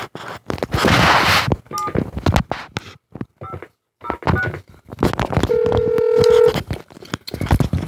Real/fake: real